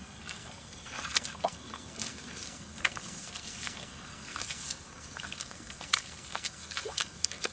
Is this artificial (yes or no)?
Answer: yes